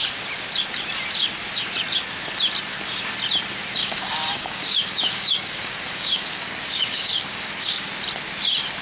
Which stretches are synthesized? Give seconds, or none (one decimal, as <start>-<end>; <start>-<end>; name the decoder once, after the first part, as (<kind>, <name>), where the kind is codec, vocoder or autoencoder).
3.8-7.9 (codec, DAC)